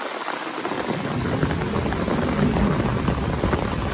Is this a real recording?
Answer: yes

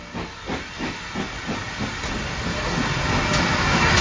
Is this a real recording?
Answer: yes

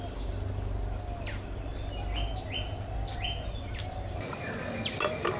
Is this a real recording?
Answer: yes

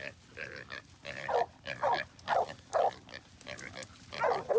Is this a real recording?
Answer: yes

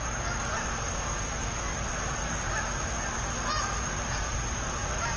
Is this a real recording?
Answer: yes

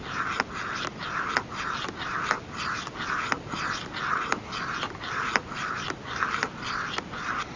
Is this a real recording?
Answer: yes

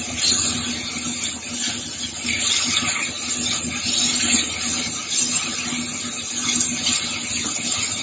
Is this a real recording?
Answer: yes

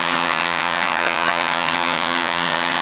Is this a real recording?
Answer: no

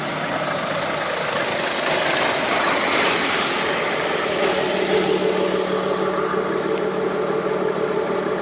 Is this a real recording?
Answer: yes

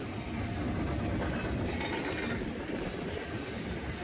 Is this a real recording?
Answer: yes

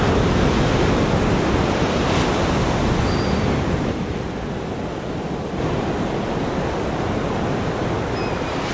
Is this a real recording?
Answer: yes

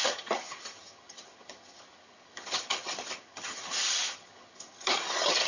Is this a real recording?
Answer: no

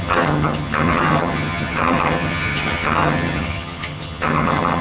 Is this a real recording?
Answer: no